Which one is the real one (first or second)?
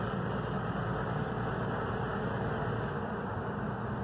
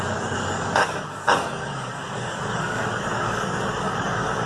first